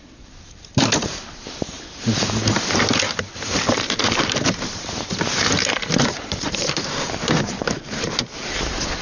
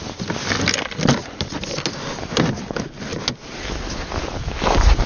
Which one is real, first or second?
second